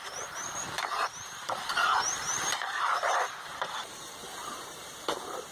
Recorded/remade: remade